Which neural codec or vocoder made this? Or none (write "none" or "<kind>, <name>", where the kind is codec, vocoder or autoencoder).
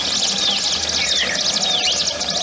none